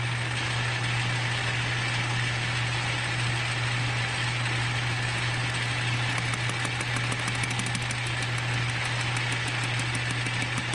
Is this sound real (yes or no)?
yes